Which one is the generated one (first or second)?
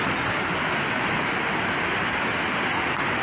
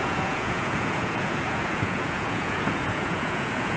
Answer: second